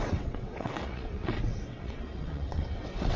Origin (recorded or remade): remade